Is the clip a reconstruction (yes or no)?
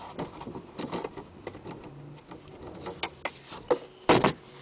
no